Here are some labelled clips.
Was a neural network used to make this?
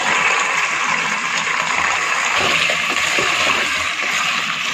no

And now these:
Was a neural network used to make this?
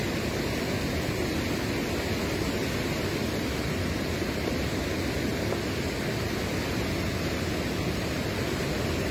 no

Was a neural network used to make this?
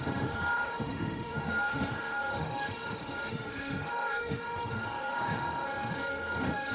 yes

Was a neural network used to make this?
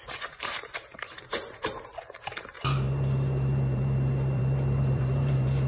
yes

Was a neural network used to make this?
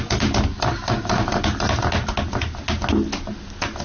no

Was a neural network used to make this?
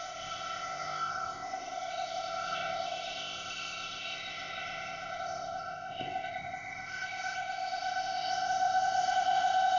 yes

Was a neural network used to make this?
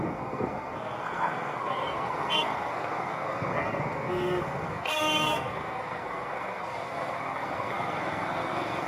yes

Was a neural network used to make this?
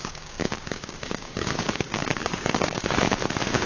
yes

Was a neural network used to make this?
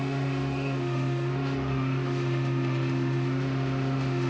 yes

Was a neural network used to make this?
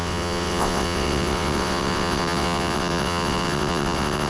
yes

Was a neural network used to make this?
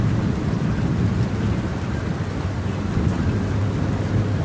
no